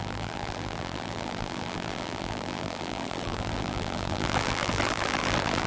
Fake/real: fake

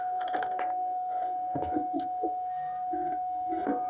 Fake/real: fake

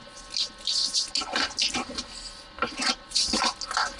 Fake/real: real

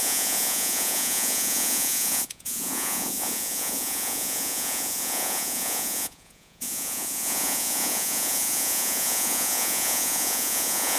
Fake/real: fake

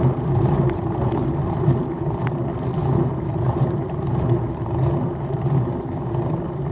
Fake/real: real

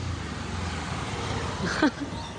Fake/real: real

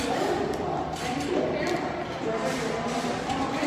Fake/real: real